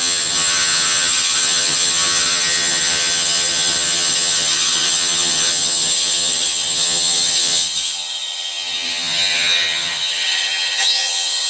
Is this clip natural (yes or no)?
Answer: no